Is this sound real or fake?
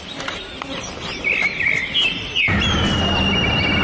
real